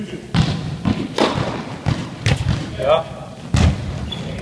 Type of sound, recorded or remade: recorded